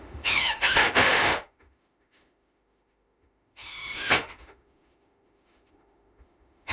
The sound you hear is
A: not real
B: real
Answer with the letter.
A